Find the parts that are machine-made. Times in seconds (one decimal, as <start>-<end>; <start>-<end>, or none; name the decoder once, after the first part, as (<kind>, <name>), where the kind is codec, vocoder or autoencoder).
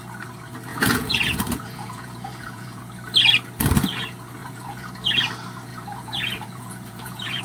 0.7-2.8 (vocoder, Vocos); 4.4-4.9; 5.7-7.4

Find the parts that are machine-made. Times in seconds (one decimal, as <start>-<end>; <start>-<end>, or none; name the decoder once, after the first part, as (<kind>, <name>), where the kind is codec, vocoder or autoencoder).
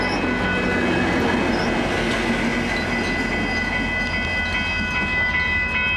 none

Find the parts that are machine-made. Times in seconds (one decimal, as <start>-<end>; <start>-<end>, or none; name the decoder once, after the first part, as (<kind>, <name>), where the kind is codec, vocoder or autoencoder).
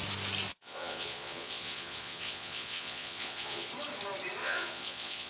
0.5-3.7 (vocoder, Vocos); 4.4-5.3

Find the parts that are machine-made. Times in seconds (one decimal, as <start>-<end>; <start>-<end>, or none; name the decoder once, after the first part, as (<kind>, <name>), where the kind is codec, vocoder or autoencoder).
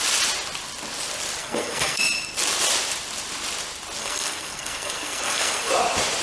1.4-2.0 (codec, SNAC); 4.0-5.7